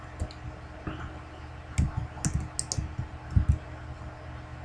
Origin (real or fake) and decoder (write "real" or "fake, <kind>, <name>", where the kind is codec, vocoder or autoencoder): real